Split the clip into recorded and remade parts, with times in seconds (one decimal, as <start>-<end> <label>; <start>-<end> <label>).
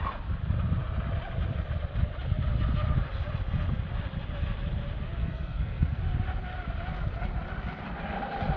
0.0-5.2 recorded; 5.2-6.0 remade; 6.0-8.6 recorded